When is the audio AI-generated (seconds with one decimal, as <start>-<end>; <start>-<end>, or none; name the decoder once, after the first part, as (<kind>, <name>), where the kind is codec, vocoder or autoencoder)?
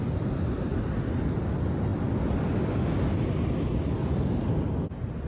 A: none